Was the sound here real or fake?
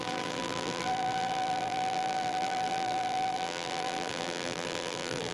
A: fake